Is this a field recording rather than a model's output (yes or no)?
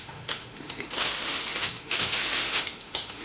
no